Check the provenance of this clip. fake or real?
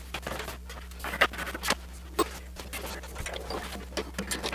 real